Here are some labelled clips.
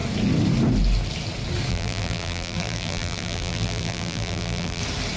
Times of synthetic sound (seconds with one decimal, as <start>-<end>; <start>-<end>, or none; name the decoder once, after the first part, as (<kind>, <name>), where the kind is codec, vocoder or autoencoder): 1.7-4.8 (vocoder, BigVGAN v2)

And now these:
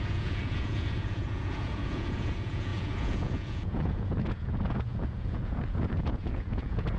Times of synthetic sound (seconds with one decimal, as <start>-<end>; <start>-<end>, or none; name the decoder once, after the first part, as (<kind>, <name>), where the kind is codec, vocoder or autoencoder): 0.0-7.0 (vocoder, Vocos)

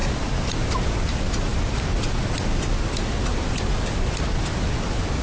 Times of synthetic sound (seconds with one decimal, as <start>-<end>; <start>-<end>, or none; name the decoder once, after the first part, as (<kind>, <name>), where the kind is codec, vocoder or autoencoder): none

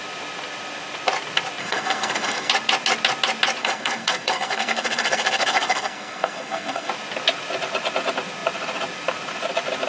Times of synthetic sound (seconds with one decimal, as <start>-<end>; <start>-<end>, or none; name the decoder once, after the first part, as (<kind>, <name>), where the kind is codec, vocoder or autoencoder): 1.6-2.5 (codec, SNAC); 3.6-6.9

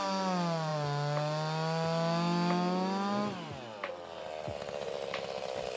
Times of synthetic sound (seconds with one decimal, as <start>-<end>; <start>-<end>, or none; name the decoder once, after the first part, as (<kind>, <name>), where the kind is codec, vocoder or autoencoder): none

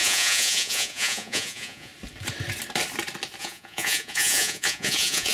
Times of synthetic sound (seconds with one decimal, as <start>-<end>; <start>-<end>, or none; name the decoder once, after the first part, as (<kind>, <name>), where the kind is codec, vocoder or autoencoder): 0.0-1.9 (vocoder, Vocos); 3.4-5.3

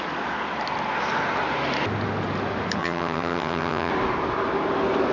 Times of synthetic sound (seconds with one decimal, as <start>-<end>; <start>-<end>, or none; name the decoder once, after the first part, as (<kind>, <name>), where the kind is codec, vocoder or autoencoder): 2.8-3.9 (vocoder, HiFi-GAN)

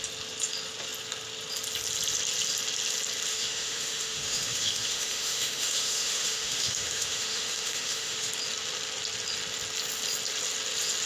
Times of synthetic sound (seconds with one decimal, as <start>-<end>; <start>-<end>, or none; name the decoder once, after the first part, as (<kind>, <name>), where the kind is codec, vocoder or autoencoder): 3.3-8.3 (autoencoder, DAC-VAE)